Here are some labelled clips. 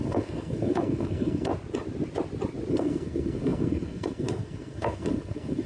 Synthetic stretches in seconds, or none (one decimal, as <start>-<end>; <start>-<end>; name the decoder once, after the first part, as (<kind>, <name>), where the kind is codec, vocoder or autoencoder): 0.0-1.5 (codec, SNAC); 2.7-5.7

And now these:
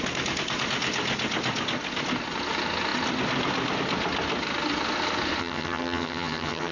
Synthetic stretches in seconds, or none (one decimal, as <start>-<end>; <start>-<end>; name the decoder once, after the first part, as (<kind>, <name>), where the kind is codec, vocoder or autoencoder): 5.4-6.7 (vocoder, HiFi-GAN)

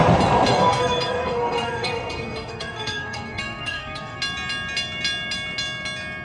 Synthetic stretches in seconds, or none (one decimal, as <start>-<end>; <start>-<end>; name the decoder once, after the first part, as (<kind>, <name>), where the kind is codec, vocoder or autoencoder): 0.5-4.2 (codec, SNAC)

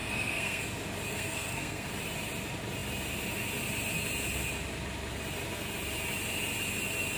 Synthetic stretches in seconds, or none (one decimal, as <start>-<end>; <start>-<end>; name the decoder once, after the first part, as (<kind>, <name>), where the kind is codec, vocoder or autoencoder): 0.0-0.6 (codec, SNAC); 1.1-1.9